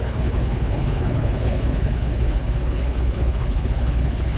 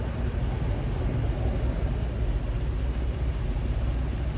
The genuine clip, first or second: second